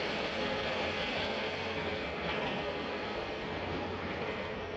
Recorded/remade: remade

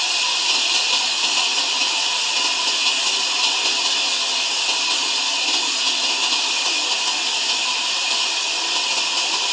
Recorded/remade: recorded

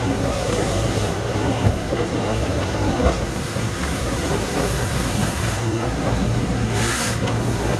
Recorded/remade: remade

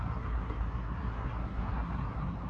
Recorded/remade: remade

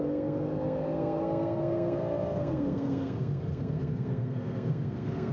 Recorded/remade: remade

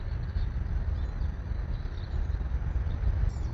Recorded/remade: recorded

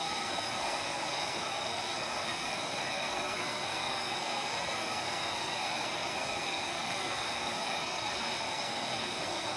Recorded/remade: remade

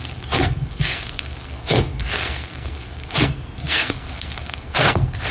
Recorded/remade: remade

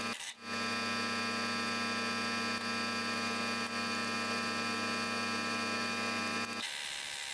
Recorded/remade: recorded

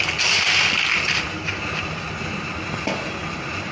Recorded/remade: recorded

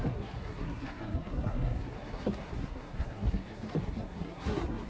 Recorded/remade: remade